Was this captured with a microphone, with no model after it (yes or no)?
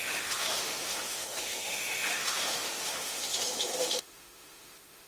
no